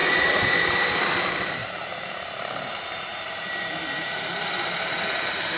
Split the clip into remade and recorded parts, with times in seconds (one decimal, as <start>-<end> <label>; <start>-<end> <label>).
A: 0.0-0.9 remade; 0.9-1.6 recorded; 1.6-4.9 remade; 4.9-5.6 recorded